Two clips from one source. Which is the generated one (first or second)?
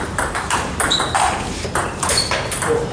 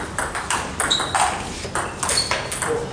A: first